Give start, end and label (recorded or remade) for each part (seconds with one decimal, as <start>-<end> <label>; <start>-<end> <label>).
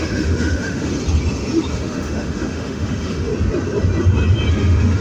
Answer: 0.0-0.9 remade; 0.9-1.7 recorded; 1.7-3.3 remade; 3.3-4.5 recorded; 4.5-5.0 remade